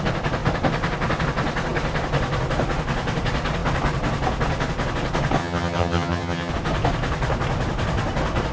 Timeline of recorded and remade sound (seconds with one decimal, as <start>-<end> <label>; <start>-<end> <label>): 0.0-5.4 recorded; 5.4-6.5 remade; 6.5-8.5 recorded